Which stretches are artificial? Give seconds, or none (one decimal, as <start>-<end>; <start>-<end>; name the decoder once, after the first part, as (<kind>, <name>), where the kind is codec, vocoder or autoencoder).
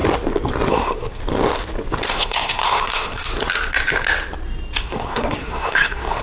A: 0.7-1.2 (codec, SNAC); 2.1-3.3; 4.8-6.2